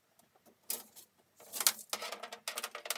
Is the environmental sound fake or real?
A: real